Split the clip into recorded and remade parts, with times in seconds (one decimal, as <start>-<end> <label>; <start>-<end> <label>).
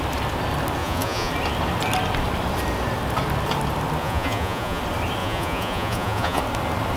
0.0-0.8 recorded; 0.8-1.3 remade; 1.3-4.0 recorded; 4.0-4.8 remade; 4.8-5.2 recorded; 5.2-6.4 remade; 6.4-7.0 recorded